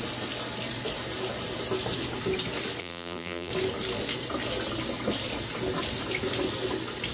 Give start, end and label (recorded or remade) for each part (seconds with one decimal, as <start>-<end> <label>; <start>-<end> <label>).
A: 0.0-2.8 recorded; 2.8-3.5 remade; 3.5-7.1 recorded